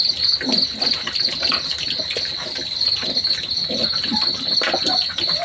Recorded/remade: recorded